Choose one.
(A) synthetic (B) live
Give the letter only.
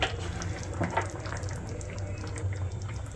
B